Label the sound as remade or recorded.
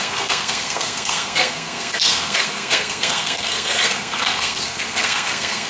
remade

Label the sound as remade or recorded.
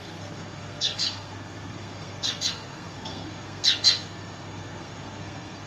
remade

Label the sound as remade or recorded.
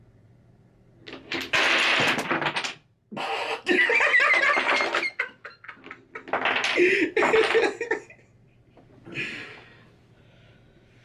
recorded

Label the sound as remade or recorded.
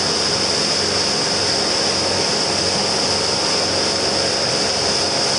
recorded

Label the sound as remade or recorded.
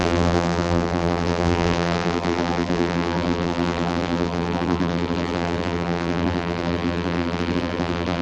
remade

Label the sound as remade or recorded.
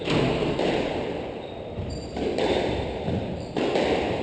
remade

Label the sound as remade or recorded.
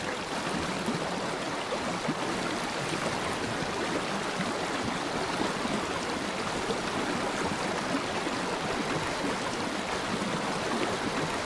recorded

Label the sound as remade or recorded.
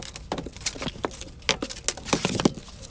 recorded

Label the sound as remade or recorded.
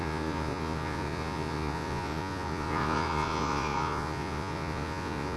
remade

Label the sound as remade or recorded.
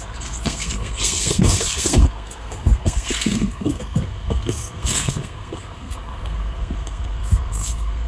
remade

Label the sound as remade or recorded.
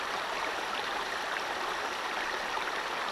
recorded